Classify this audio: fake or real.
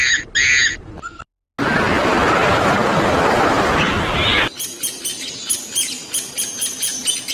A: real